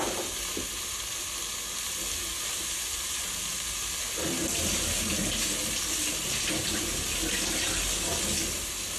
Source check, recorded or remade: recorded